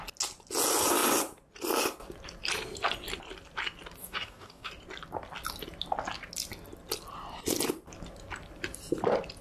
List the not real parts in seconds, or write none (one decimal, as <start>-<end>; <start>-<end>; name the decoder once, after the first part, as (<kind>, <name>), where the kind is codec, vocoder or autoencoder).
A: 4.0-4.7 (codec, DAC)